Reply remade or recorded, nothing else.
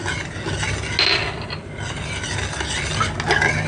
recorded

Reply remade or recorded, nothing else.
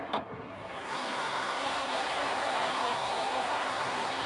remade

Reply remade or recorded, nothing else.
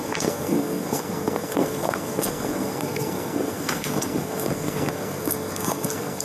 remade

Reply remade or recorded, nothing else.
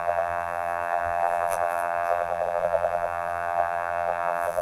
remade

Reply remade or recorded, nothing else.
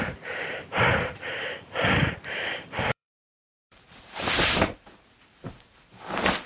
remade